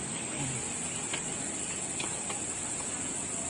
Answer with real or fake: real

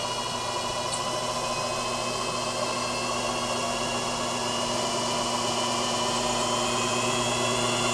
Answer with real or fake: real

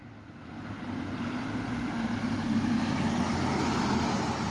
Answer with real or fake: real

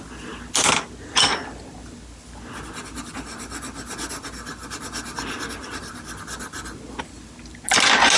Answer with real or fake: real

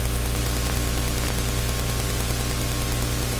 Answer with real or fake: real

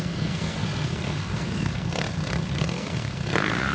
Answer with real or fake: fake